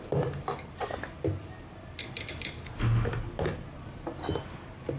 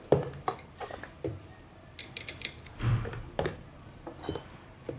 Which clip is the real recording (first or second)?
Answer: first